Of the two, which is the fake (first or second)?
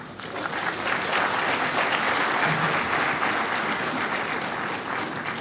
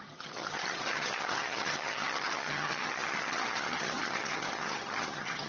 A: second